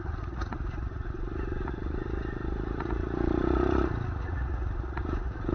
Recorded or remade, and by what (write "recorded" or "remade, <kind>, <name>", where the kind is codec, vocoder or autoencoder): remade, vocoder, Vocos